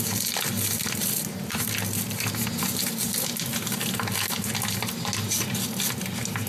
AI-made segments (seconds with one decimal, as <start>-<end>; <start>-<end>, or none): none